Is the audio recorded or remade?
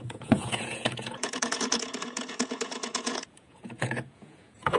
remade